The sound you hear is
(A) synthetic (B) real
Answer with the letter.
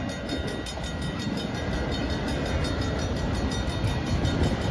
B